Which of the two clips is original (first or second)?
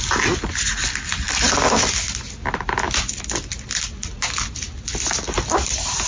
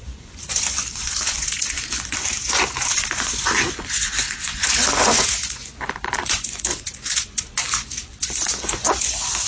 first